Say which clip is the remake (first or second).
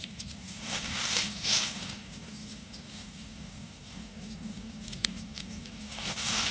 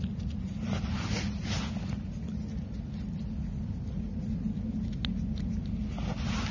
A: first